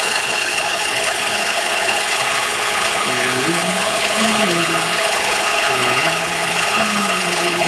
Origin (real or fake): fake